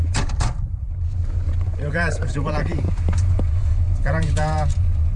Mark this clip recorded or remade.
remade